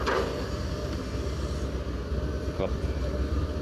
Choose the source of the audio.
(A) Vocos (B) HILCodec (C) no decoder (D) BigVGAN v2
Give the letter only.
D